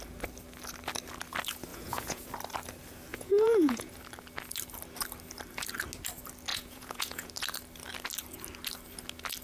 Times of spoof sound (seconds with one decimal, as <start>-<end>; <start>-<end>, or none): 1.7-2.3; 3.1-3.9; 6.5-7.3